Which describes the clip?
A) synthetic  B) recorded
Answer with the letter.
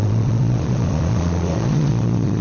A